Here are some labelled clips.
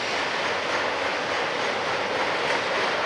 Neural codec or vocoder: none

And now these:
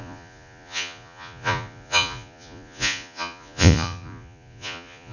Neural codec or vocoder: vocoder, Vocos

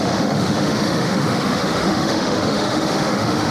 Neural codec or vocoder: autoencoder, DAC-VAE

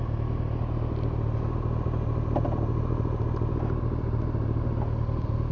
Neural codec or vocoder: none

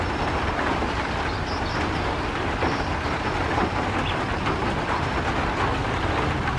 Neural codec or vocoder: none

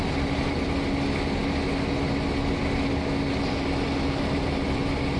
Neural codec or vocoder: none